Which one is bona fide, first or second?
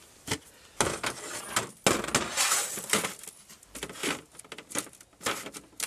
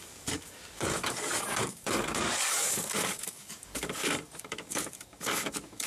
first